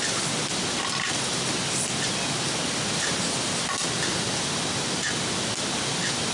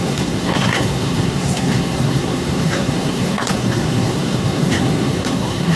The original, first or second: first